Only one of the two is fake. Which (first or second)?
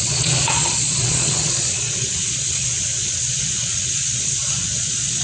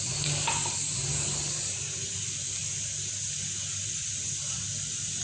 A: first